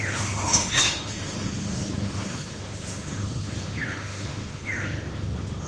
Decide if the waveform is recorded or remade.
remade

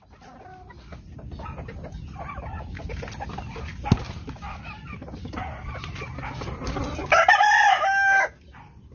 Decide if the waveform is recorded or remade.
recorded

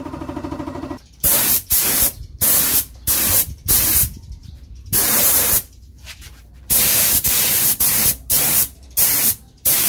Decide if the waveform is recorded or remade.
remade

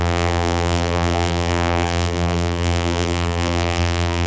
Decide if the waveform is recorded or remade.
remade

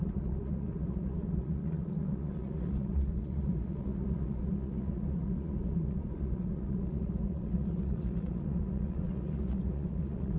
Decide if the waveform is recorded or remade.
remade